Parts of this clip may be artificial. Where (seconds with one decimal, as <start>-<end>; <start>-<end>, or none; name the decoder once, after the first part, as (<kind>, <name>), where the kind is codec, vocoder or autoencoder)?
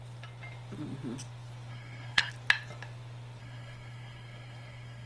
1.7-2.3 (codec, SNAC); 3.4-5.1